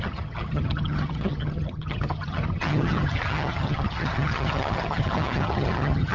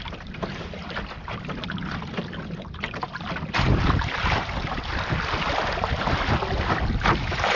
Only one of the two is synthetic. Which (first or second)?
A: first